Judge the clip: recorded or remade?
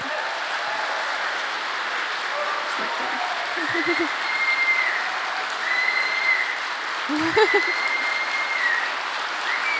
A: recorded